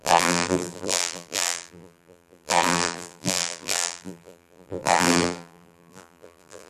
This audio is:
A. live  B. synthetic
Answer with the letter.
B